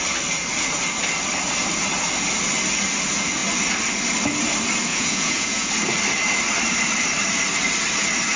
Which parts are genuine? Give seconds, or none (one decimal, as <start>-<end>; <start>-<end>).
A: 0.0-4.9; 5.7-8.4